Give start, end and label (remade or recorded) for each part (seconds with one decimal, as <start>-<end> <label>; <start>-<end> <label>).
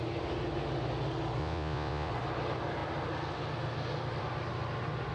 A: 0.0-1.4 recorded; 1.4-2.1 remade; 2.1-5.1 recorded